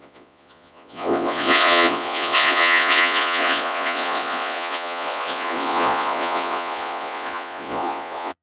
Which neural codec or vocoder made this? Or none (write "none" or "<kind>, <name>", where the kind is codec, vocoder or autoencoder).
vocoder, Vocos